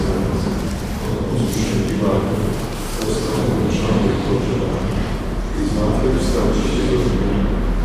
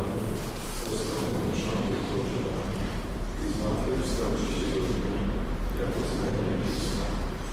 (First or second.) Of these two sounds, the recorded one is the first